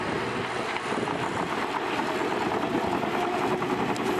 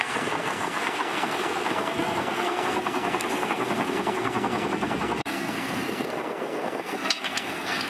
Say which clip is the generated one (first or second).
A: second